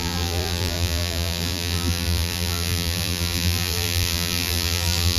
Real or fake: fake